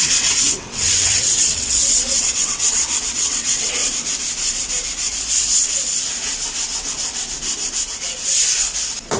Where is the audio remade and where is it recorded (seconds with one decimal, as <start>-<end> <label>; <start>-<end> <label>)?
0.0-3.8 remade; 3.8-9.2 recorded